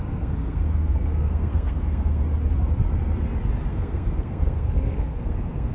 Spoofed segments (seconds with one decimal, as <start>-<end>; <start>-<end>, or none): 0.0-2.2; 3.7-5.7